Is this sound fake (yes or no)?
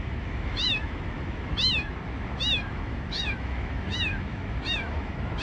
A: yes